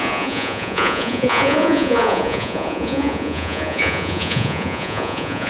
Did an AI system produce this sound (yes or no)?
yes